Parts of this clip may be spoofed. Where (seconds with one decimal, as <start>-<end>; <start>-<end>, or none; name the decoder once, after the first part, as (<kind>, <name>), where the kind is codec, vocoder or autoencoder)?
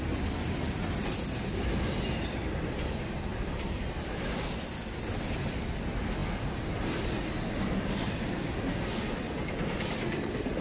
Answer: 3.3-4.7 (vocoder, BigVGAN v2)